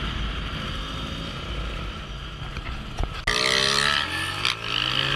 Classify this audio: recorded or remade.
recorded